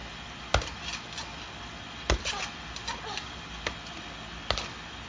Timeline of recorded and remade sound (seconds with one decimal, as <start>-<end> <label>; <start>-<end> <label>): 0.0-5.1 recorded